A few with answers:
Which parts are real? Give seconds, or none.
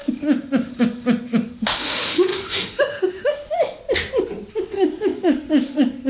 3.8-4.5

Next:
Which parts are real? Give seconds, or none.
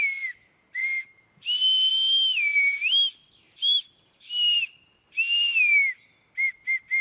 0.0-3.4; 5.7-7.0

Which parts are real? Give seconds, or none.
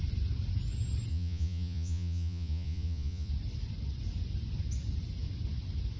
0.0-1.1; 3.3-6.0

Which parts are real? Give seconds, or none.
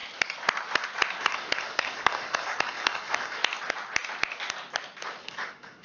0.0-1.1; 3.4-5.2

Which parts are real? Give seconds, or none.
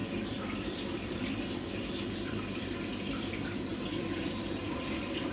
0.0-5.3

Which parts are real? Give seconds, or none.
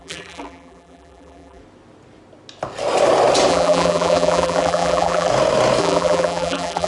1.6-3.5; 5.3-5.8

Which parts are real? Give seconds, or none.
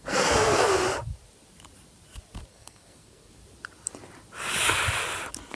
0.7-2.5; 3.4-5.5